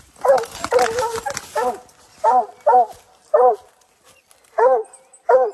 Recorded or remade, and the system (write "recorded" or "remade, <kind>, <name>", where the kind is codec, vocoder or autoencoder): recorded